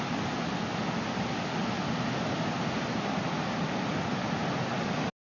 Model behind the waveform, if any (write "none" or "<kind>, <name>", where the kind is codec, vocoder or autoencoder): none